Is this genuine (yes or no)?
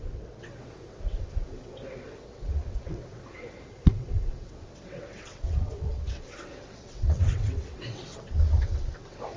no